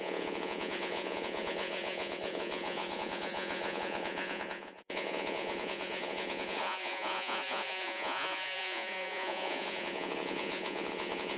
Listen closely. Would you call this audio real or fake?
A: fake